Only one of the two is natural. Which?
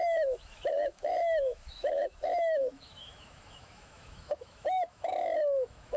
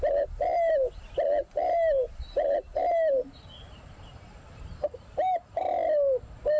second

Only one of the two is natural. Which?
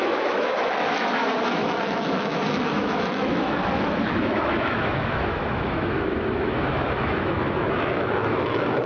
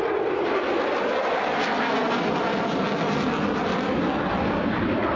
second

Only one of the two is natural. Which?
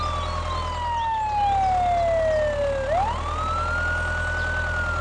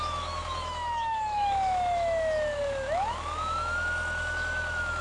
first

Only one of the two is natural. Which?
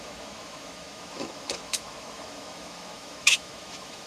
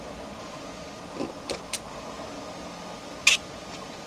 second